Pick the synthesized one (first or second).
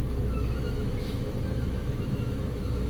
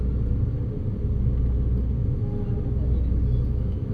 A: first